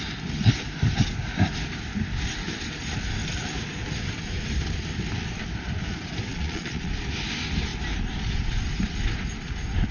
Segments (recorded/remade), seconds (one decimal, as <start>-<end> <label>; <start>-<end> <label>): 0.0-6.3 recorded; 6.3-6.9 remade; 6.9-9.9 recorded